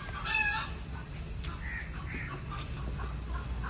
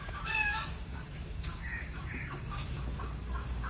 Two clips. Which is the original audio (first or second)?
first